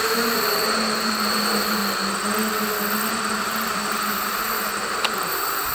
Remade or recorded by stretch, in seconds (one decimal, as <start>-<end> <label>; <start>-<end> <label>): 0.0-1.8 remade; 1.8-3.1 recorded; 3.1-5.7 remade